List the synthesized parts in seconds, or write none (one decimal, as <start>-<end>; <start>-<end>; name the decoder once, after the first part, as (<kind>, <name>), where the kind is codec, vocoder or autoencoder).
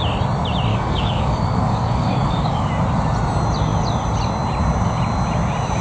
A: 0.7-2.7 (codec, DAC)